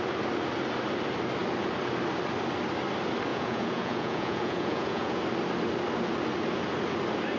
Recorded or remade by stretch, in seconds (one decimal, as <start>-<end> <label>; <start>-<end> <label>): 0.0-3.3 recorded; 3.3-5.2 remade; 5.2-7.4 recorded